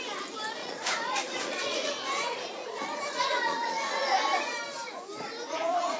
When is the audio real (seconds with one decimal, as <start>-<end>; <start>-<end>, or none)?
0.0-0.6; 4.2-5.4